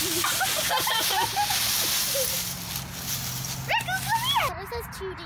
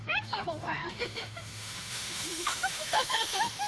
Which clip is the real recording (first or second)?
first